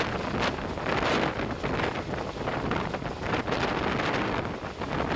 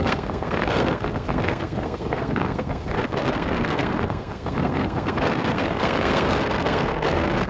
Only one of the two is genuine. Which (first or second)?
first